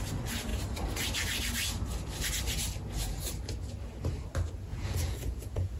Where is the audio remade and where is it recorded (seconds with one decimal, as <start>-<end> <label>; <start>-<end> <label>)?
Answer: 0.0-4.7 recorded; 4.7-5.8 remade